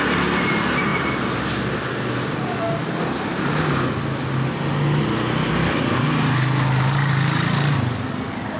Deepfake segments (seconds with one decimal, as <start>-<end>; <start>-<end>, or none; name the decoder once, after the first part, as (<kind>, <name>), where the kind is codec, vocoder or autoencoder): none